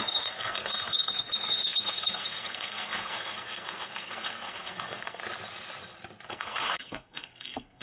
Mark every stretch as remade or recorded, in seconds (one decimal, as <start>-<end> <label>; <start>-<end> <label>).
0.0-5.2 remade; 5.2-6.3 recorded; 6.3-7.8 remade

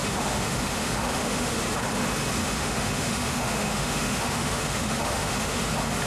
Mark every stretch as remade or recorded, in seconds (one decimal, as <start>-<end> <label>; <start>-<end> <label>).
0.0-1.5 remade; 1.5-2.4 recorded; 2.4-5.6 remade; 5.6-6.1 recorded

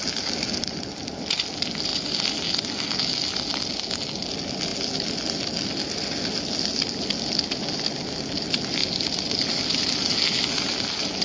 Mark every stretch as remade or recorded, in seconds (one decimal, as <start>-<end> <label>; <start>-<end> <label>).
0.0-11.2 recorded

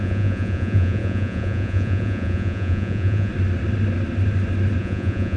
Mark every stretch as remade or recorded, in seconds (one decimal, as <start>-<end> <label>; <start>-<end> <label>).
0.0-3.3 remade; 3.3-4.8 recorded; 4.8-5.4 remade

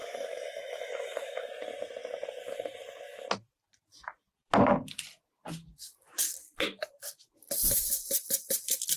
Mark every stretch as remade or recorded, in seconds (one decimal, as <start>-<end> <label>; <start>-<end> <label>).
0.0-1.5 remade; 1.5-9.0 recorded

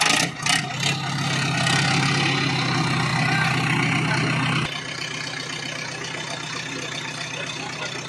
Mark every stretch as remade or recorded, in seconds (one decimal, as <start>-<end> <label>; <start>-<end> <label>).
0.0-8.1 recorded